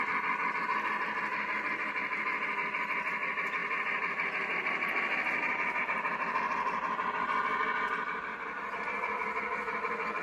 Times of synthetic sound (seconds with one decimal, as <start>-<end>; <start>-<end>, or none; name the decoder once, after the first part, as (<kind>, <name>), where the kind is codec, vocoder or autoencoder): none